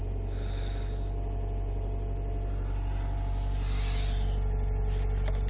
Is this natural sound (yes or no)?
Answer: yes